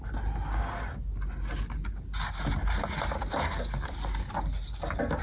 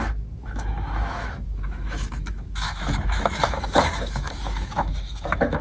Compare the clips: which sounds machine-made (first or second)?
second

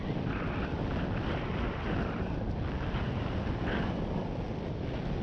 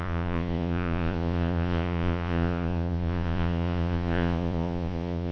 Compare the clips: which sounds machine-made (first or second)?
second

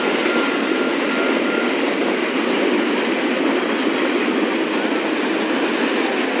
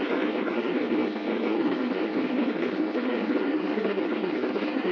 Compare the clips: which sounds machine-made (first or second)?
second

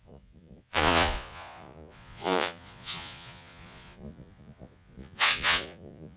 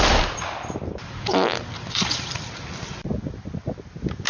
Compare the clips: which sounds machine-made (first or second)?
first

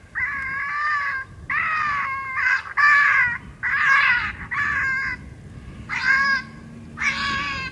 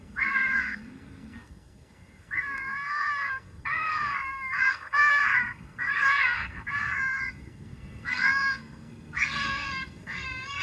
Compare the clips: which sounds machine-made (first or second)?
second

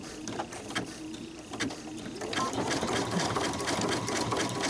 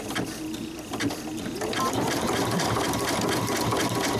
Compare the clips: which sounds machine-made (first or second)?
first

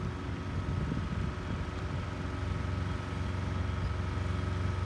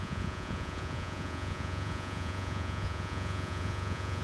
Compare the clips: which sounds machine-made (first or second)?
second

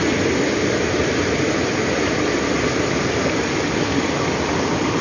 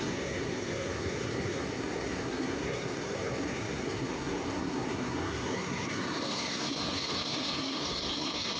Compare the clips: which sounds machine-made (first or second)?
second